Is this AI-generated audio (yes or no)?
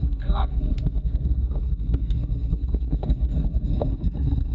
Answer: yes